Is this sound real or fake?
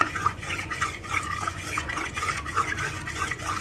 fake